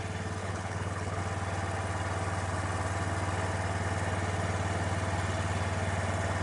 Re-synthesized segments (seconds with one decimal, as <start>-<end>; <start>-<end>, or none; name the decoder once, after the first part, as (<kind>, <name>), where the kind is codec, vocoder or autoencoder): 0.4-1.2 (codec, HILCodec)